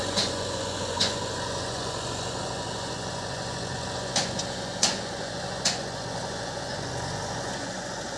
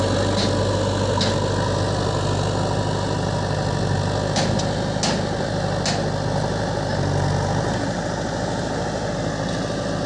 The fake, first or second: first